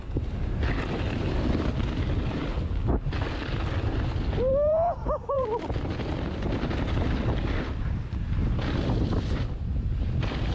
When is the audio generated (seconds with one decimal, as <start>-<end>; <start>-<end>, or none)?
0.0-2.5; 4.5-10.5

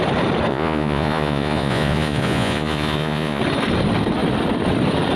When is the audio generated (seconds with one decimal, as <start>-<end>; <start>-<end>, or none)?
0.5-3.4

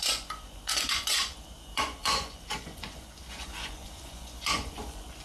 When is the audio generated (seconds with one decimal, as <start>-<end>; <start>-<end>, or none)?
0.0-5.2

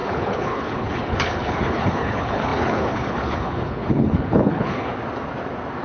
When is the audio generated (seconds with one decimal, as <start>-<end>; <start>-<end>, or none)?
0.0-4.9

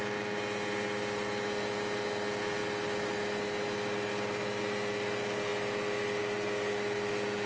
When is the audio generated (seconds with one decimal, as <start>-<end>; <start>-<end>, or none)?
none